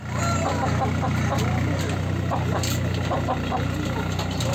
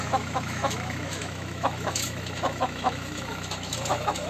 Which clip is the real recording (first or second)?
first